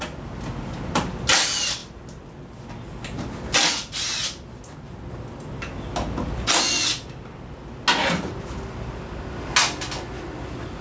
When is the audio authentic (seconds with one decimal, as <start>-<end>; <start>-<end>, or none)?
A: 0.0-10.8